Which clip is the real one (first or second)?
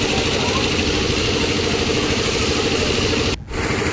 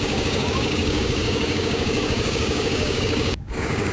first